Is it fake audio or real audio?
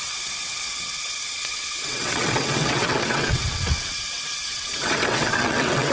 fake